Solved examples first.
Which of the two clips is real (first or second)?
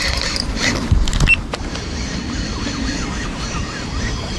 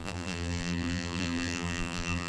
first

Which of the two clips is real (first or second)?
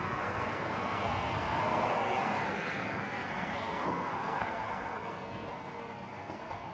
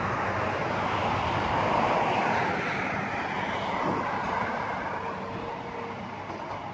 second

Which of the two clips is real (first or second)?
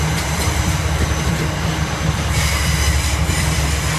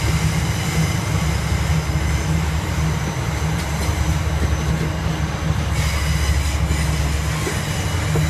second